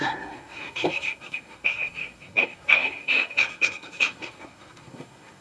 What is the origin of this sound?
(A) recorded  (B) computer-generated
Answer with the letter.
B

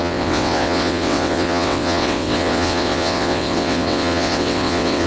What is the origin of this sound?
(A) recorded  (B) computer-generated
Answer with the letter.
B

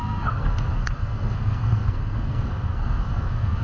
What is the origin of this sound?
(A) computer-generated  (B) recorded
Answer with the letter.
A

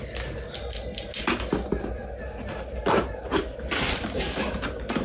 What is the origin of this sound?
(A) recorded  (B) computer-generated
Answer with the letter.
A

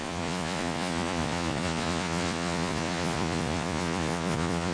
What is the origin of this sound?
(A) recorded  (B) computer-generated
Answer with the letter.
B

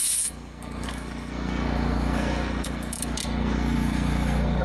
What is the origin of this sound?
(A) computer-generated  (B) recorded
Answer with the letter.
A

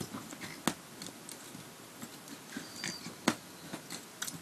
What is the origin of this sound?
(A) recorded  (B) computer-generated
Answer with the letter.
A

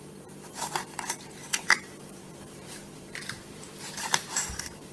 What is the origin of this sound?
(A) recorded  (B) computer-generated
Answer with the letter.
B